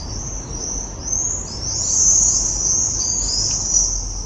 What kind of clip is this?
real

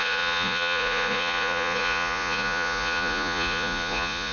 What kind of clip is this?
fake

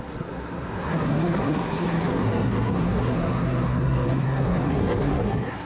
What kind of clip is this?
fake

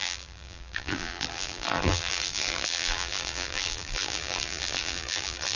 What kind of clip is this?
fake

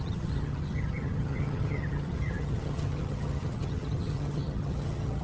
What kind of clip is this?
fake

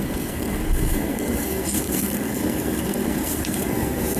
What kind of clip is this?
fake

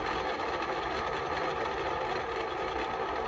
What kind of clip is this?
real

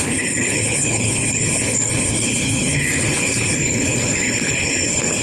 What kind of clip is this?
fake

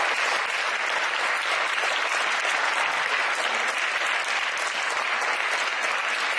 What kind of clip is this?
real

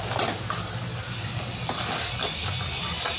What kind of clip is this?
real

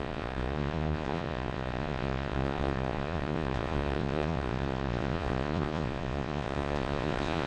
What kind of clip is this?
fake